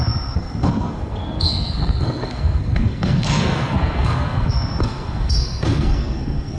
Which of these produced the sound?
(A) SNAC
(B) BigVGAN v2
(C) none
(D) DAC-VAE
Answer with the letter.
A